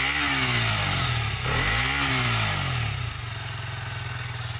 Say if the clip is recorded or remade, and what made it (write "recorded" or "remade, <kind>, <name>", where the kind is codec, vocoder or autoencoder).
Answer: recorded